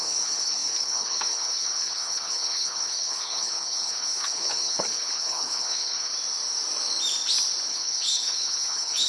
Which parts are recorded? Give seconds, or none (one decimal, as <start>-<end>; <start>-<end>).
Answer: 6.1-7.7

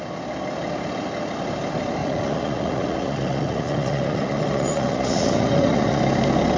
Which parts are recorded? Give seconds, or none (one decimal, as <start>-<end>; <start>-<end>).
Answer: 0.0-2.0; 6.0-6.6

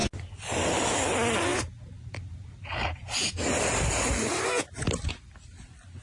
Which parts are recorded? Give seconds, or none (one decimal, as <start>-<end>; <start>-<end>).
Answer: 0.0-6.0

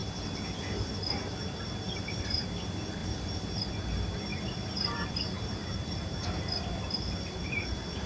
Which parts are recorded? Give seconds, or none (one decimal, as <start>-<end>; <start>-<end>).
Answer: 0.0-3.0; 3.6-4.3; 7.5-8.1

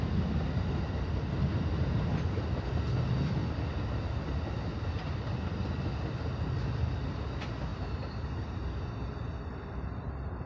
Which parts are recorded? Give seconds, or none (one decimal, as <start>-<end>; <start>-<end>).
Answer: 0.0-10.5

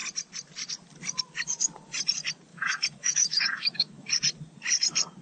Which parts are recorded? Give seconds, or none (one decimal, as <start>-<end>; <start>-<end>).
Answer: 0.0-2.5; 4.1-5.2

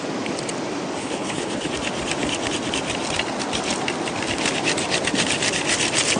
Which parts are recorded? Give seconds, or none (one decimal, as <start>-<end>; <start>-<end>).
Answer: 0.0-1.0; 1.7-6.2

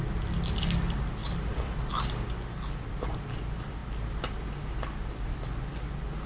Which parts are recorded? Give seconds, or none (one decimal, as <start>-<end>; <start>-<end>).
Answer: 0.0-1.2; 1.9-6.3